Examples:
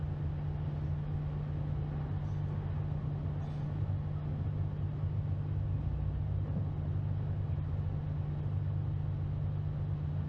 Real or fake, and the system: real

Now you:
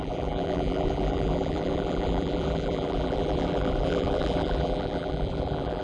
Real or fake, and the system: fake, vocoder, BigVGAN v2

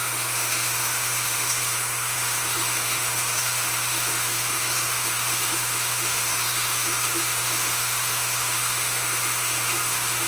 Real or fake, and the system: fake, autoencoder, DAC-VAE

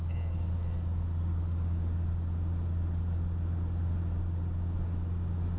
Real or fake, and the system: real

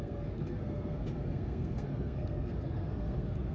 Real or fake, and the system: fake, codec, SNAC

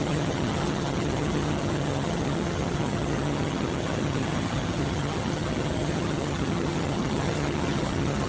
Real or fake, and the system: fake, vocoder, HiFi-GAN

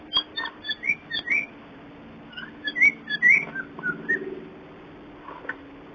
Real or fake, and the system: real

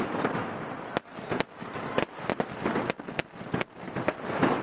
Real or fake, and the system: real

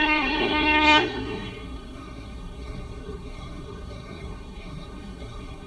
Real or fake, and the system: fake, codec, SNAC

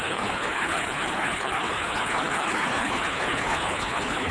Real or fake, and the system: fake, codec, HILCodec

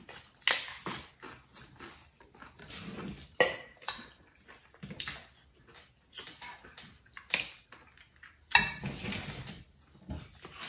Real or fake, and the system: real